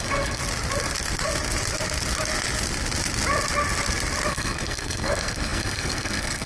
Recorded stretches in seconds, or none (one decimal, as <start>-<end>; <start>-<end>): 0.4-4.3